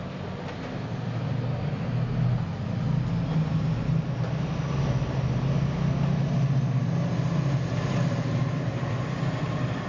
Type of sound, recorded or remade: recorded